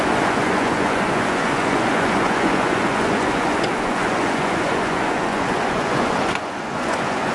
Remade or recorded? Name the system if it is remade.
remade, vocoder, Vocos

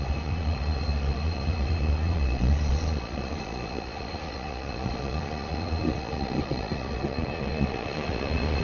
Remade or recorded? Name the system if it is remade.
remade, vocoder, Vocos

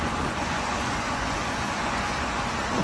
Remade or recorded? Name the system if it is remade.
remade, vocoder, Vocos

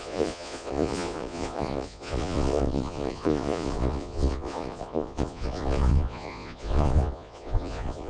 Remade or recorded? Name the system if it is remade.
remade, vocoder, Vocos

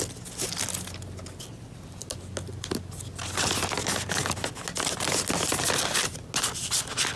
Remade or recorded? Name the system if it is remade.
recorded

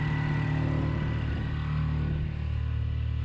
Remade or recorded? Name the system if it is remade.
recorded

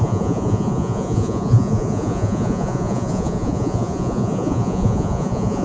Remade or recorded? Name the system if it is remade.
remade, vocoder, Vocos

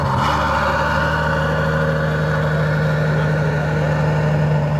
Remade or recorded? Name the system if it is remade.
recorded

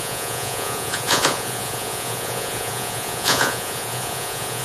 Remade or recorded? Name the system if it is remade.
remade, vocoder, Vocos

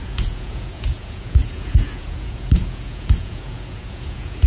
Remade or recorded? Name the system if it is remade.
remade, vocoder, Vocos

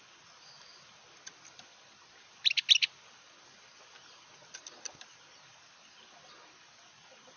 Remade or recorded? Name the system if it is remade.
recorded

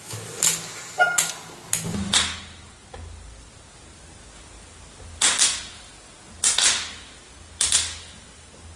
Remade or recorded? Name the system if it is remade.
recorded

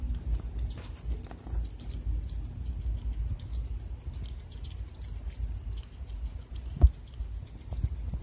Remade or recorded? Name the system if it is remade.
recorded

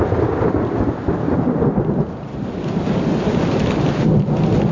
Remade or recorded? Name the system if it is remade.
recorded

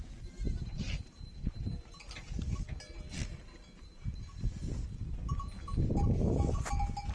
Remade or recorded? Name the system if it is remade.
recorded